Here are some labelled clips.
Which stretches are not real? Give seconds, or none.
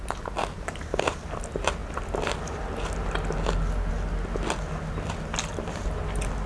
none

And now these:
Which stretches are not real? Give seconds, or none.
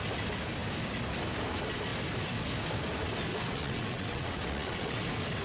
3.3-5.0 (vocoder, WaveNeXt)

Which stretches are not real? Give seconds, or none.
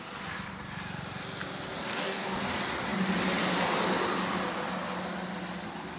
1.9-2.4 (codec, DAC)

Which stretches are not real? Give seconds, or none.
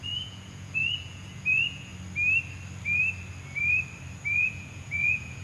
0.0-1.9 (vocoder, Vocos); 4.3-5.4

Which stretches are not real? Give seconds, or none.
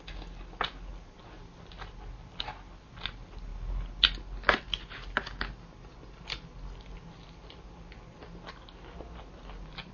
none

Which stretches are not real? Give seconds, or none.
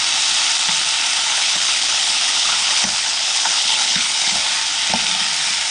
1.3-4.4 (codec, HILCodec)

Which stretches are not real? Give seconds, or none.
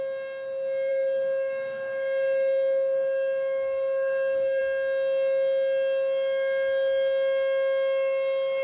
0.9-4.6 (codec, DAC)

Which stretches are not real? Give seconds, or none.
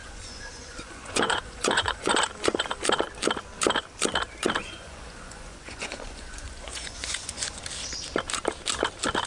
0.0-2.1 (vocoder, Vocos); 4.6-7.6